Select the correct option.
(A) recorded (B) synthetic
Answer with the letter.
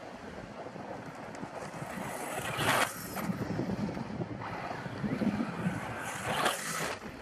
A